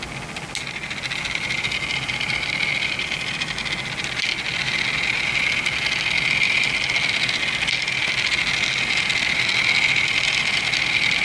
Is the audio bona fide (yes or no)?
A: yes